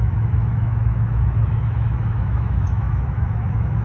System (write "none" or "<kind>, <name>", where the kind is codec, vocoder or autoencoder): autoencoder, DAC-VAE